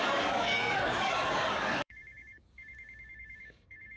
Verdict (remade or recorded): remade